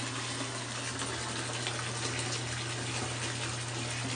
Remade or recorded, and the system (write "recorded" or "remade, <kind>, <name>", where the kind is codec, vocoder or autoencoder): recorded